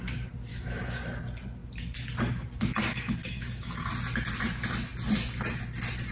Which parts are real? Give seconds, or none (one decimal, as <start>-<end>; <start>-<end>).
0.0-0.5; 1.0-3.2; 3.9-6.1

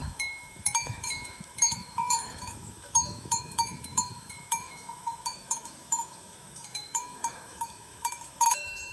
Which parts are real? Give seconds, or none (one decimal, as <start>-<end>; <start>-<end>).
none

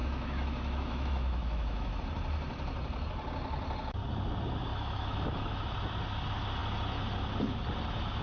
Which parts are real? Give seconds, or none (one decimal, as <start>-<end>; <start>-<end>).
2.0-4.7; 5.6-8.2

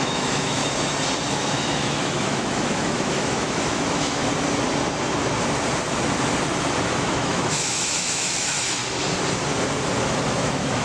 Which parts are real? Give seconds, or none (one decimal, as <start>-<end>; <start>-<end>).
0.6-1.3; 4.2-7.1; 8.8-10.3

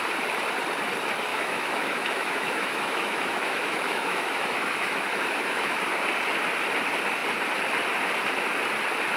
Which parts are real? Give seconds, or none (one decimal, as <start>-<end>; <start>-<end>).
0.0-1.3; 5.8-9.2

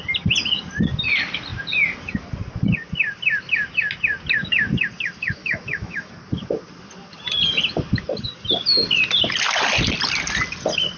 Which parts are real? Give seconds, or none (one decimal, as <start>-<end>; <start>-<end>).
0.0-5.4; 6.1-11.0

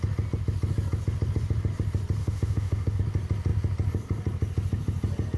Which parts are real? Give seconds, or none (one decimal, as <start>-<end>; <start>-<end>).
0.0-2.2; 3.0-5.4

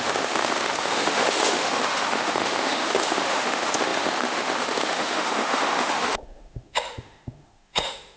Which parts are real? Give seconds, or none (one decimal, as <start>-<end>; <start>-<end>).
none